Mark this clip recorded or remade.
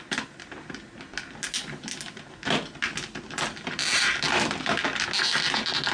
recorded